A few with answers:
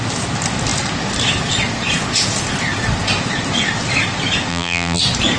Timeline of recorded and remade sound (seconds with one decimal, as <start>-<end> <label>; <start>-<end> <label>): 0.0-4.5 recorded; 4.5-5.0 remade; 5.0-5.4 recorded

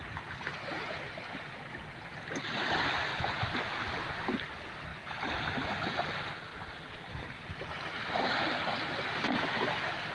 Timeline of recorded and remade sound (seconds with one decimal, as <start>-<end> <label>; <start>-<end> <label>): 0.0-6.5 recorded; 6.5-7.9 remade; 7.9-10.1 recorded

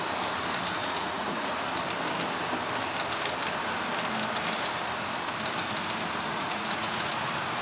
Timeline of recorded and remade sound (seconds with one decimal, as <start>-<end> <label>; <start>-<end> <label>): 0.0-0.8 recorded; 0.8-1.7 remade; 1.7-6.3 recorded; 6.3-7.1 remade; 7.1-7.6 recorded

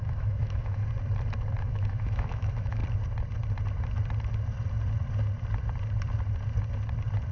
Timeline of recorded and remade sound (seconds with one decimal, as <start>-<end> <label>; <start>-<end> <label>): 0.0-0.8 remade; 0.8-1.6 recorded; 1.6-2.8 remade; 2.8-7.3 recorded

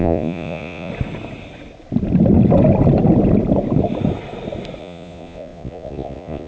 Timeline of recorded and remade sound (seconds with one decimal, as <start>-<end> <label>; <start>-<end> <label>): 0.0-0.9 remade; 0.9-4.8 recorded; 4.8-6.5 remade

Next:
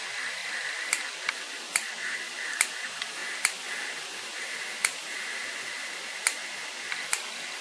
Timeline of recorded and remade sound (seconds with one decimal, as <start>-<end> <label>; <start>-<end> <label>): 0.0-0.4 remade; 0.4-1.6 recorded; 1.6-3.2 remade; 3.2-4.0 recorded; 4.0-7.6 remade

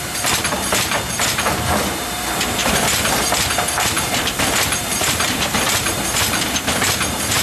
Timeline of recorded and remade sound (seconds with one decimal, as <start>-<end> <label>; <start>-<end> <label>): 0.0-7.4 remade

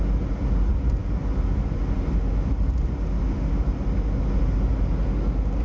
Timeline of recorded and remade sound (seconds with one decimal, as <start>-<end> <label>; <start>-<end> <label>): 0.0-5.6 recorded